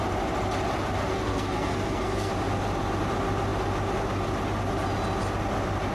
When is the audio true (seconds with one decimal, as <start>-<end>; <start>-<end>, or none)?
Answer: 0.0-1.0; 2.3-5.9